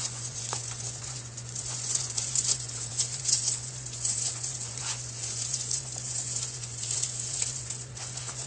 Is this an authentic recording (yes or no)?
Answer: no